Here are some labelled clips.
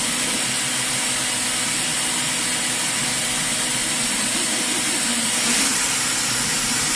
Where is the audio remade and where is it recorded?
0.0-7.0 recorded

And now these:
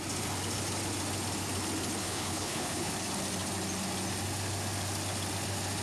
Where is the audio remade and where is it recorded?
0.0-2.0 recorded; 2.0-2.9 remade; 2.9-5.8 recorded

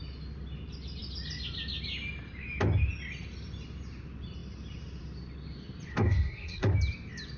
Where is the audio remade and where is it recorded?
0.0-5.9 recorded; 5.9-6.7 remade; 6.7-7.4 recorded

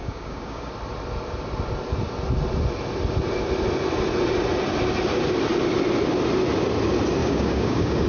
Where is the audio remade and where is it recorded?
0.0-0.7 remade; 0.7-7.2 recorded; 7.2-8.1 remade

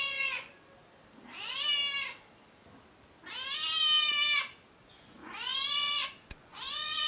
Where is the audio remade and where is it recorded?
0.0-0.5 remade; 0.5-4.8 recorded; 4.8-7.1 remade

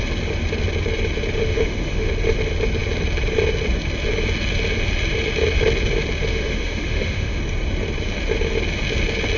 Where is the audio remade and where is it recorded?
0.0-1.4 recorded; 1.4-2.1 remade; 2.1-6.3 recorded; 6.3-7.4 remade; 7.4-9.4 recorded